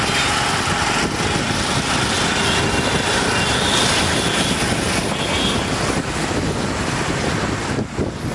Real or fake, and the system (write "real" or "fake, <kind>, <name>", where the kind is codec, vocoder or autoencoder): real